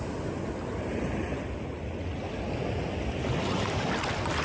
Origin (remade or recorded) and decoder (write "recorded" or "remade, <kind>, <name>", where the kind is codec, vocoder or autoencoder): recorded